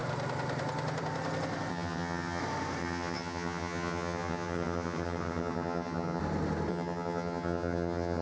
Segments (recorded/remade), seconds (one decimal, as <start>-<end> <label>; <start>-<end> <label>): 0.0-1.7 recorded; 1.7-2.4 remade; 2.4-2.8 recorded; 2.8-6.2 remade; 6.2-6.7 recorded; 6.7-8.2 remade

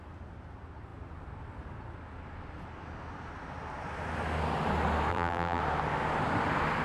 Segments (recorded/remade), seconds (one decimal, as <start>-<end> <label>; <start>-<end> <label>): 0.0-5.1 recorded; 5.1-5.6 remade; 5.6-6.8 recorded

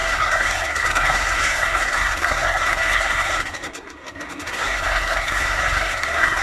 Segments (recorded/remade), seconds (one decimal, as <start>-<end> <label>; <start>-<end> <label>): 0.0-6.4 remade

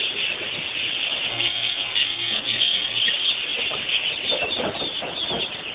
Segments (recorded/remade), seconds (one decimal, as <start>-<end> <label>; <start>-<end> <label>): 0.0-1.3 recorded; 1.3-3.0 remade; 3.0-5.7 recorded

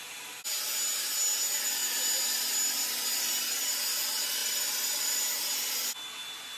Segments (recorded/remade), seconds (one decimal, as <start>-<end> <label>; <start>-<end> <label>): 0.0-4.4 recorded; 4.4-5.2 remade; 5.2-6.6 recorded

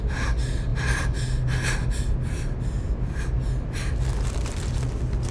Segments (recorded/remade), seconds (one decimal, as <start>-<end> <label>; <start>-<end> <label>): 0.0-5.3 recorded

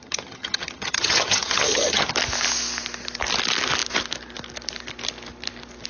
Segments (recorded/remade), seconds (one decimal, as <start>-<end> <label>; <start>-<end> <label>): 0.0-2.1 remade; 2.1-5.9 recorded

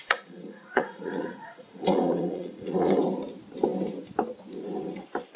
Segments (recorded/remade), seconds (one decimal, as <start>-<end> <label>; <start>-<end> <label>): 0.0-3.0 remade; 3.0-5.4 recorded